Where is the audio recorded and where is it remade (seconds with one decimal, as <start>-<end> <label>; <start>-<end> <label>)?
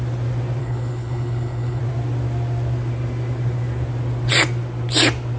0.0-0.6 recorded; 0.6-1.8 remade; 1.8-5.4 recorded